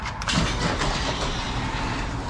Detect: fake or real real